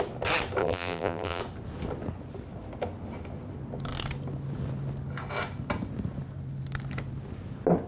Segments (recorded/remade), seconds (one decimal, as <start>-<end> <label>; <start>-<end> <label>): 0.0-0.6 recorded; 0.6-1.4 remade; 1.4-7.9 recorded